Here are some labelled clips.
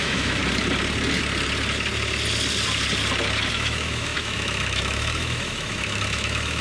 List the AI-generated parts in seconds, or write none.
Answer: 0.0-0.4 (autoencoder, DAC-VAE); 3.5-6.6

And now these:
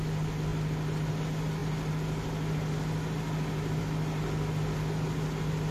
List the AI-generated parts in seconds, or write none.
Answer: none

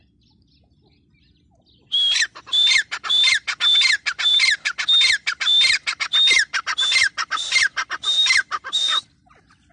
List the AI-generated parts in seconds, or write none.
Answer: none

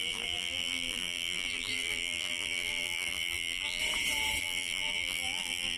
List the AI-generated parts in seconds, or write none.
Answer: 0.0-3.8 (vocoder, BigVGAN v2); 4.4-5.8